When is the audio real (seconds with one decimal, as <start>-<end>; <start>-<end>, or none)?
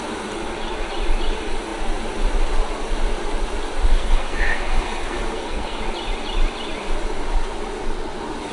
0.0-3.9; 5.8-8.5